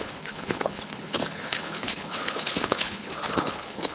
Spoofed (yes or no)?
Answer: yes